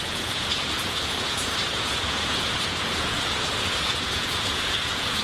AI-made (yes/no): yes